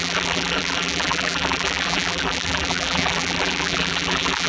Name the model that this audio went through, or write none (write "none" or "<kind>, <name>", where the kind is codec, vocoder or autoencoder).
vocoder, BigVGAN v2